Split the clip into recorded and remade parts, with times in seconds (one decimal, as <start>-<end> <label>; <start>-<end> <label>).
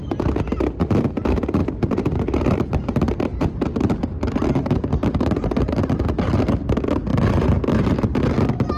0.0-1.6 recorded; 1.6-6.0 remade; 6.0-7.1 recorded; 7.1-8.0 remade; 8.0-8.8 recorded